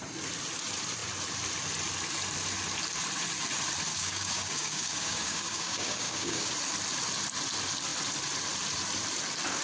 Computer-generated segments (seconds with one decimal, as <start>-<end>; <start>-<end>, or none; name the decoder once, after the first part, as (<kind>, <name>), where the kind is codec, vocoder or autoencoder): 3.9-6.5 (codec, DAC)